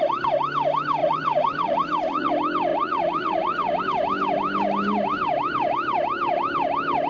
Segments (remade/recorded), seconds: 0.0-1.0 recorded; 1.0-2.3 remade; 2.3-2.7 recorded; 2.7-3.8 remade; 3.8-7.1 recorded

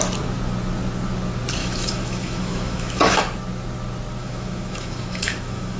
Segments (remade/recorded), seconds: 0.0-1.6 recorded; 1.6-3.2 remade; 3.2-4.2 recorded; 4.2-5.8 remade

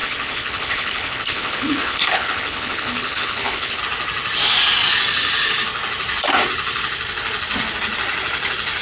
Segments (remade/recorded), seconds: 0.0-3.8 remade; 3.8-8.8 recorded

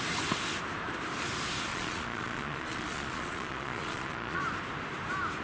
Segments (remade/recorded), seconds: 0.0-1.7 recorded; 1.7-4.4 remade; 4.4-5.4 recorded

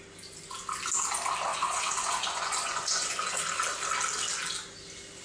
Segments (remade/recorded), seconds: 0.0-1.5 recorded; 1.5-3.4 remade; 3.4-5.2 recorded

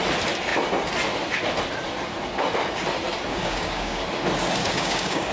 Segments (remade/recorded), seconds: 0.0-3.3 recorded; 3.3-4.0 remade; 4.0-4.6 recorded; 4.6-5.3 remade

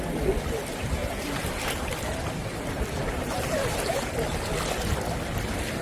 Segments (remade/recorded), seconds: 0.0-1.0 recorded; 1.0-4.5 remade; 4.5-5.8 recorded

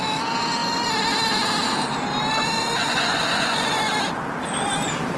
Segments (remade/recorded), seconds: 0.0-2.8 recorded; 2.8-3.9 remade; 3.9-5.2 recorded